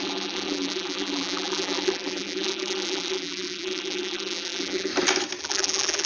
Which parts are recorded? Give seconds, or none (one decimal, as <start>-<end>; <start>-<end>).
4.9-5.4